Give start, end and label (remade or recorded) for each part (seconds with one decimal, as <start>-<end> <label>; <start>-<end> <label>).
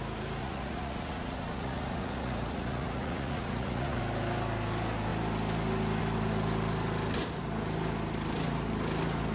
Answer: 0.0-0.4 recorded; 0.4-4.0 remade; 4.0-9.3 recorded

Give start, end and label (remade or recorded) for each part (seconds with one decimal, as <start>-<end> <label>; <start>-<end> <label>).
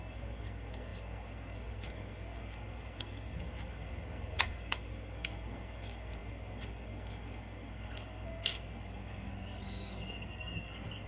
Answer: 0.0-11.1 remade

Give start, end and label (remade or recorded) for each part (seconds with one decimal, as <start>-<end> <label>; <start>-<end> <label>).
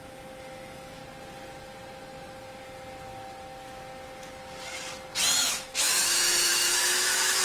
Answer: 0.0-1.0 remade; 1.0-5.4 recorded; 5.4-7.4 remade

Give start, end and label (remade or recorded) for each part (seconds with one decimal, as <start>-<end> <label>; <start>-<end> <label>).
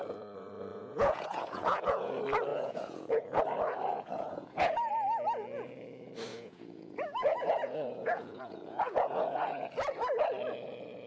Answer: 0.0-0.7 recorded; 0.7-2.1 remade; 2.1-2.5 recorded; 2.5-3.4 remade; 3.4-3.9 recorded; 3.9-4.9 remade; 4.9-6.3 recorded; 6.3-9.7 remade; 9.7-11.1 recorded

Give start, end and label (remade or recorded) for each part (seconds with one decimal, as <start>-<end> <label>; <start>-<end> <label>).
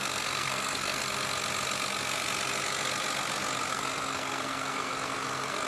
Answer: 0.0-1.0 remade; 1.0-3.7 recorded; 3.7-5.7 remade